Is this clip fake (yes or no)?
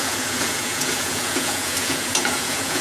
yes